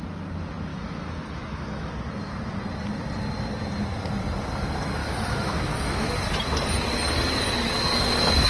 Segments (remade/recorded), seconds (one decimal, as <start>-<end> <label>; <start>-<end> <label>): 0.0-0.7 recorded; 0.7-1.9 remade; 1.9-5.0 recorded; 5.0-6.2 remade; 6.2-8.5 recorded